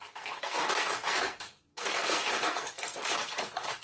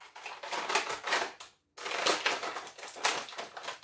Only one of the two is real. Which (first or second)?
second